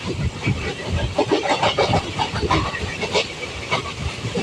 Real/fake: fake